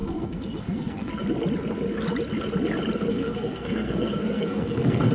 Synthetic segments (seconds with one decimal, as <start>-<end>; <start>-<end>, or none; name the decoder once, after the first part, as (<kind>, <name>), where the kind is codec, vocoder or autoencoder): 0.0-1.1 (codec, SNAC); 3.1-5.1